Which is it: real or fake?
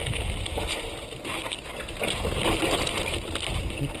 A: real